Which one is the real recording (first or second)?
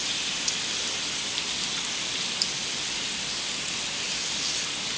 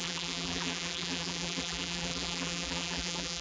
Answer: first